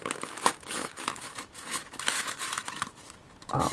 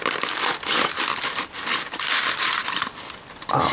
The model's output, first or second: first